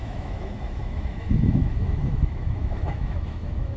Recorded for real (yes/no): no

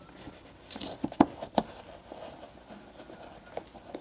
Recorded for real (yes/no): yes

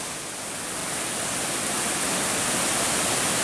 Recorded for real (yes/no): yes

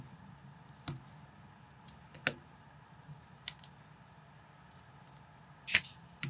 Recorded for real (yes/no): yes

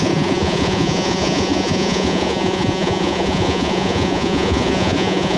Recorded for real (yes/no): no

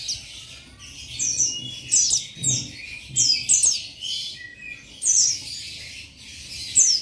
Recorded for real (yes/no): yes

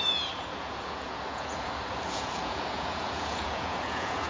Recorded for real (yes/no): no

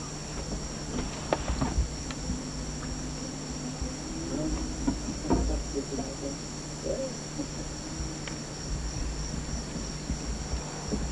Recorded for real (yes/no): yes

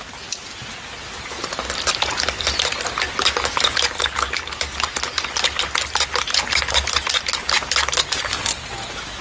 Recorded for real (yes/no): yes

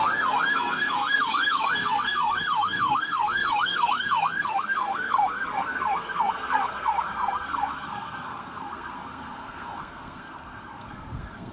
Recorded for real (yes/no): no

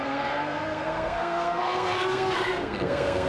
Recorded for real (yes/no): no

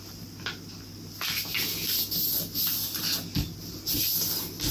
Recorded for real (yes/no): yes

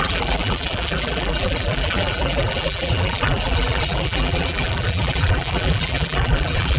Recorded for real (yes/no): no